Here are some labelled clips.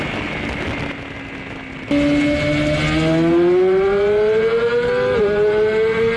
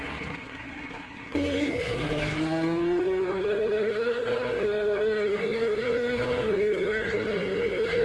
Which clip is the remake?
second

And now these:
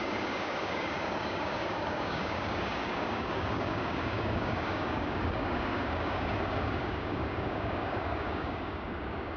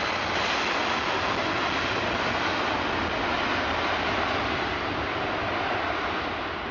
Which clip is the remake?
first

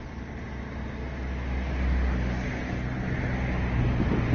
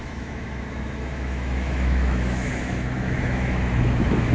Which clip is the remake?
second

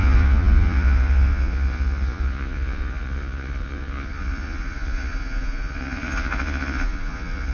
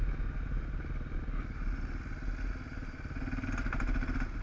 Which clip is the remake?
first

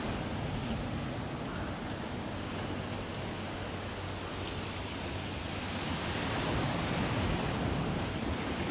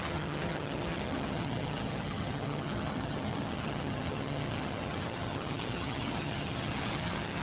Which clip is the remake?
second